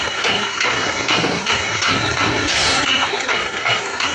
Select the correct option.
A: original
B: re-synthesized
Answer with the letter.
B